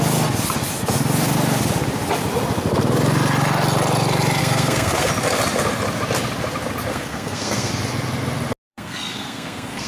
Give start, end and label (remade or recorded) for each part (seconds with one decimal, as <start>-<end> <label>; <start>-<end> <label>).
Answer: 0.0-4.4 recorded; 4.4-5.1 remade; 5.1-6.9 recorded; 6.9-7.7 remade; 7.7-8.7 recorded; 8.7-9.9 remade